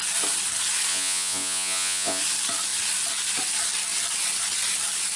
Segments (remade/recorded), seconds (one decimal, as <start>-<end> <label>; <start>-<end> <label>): 0.0-0.9 recorded; 0.9-2.2 remade; 2.2-5.2 recorded